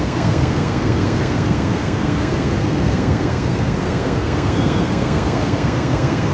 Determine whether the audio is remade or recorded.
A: remade